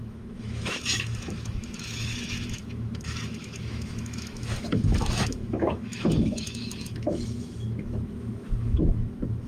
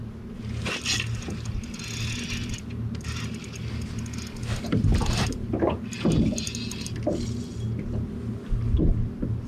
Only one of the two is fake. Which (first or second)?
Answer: first